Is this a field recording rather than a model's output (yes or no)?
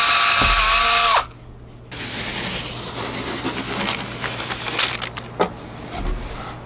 yes